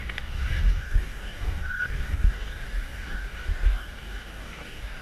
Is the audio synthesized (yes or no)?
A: yes